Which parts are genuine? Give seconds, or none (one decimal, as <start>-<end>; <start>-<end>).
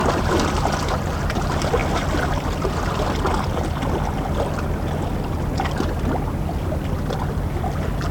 1.8-6.5